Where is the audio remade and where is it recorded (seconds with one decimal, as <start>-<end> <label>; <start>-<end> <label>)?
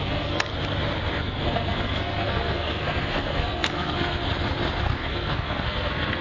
0.0-0.5 remade; 0.5-1.1 recorded; 1.1-4.2 remade; 4.2-4.8 recorded; 4.8-6.2 remade